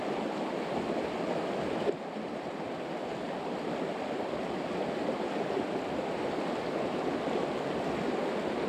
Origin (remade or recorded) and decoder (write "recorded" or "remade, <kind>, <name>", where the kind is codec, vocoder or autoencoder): recorded